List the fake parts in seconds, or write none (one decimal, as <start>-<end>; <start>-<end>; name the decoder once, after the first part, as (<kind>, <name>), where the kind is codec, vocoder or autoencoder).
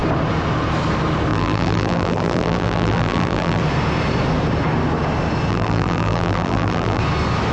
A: 1.3-3.6 (vocoder, BigVGAN v2); 5.5-7.0